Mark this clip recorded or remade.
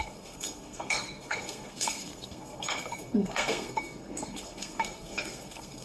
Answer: remade